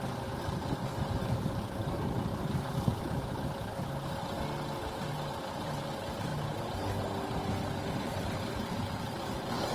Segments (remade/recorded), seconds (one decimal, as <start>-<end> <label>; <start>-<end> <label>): 0.0-3.7 remade; 3.7-5.3 recorded; 5.3-6.3 remade; 6.3-7.9 recorded; 7.9-9.7 remade